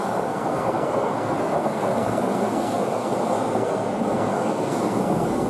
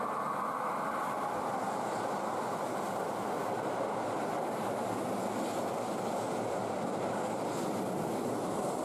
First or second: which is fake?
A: first